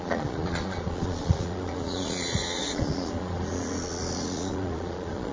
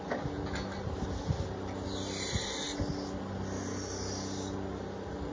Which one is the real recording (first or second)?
second